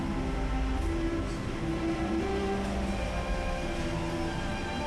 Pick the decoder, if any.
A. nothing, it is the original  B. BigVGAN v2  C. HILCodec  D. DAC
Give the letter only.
A